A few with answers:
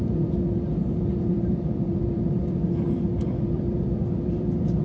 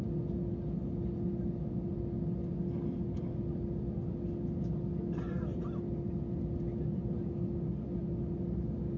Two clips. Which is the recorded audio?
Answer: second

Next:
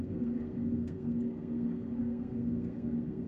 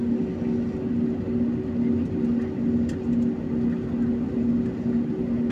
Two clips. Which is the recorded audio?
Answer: second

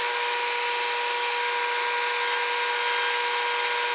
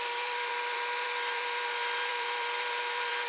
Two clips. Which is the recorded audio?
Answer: first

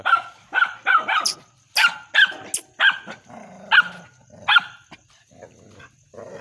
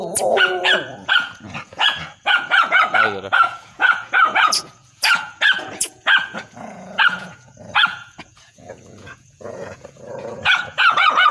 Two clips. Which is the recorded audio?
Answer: first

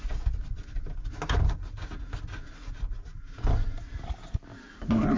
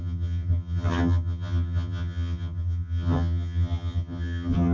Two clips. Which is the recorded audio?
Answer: first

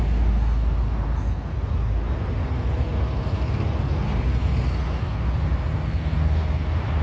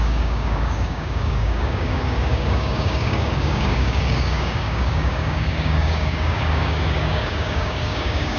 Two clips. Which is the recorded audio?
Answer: first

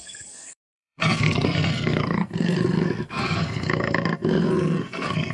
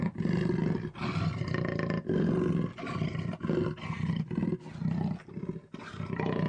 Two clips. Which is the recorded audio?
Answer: second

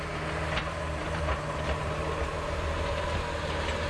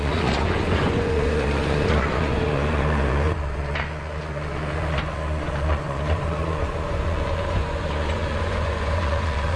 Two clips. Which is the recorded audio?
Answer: first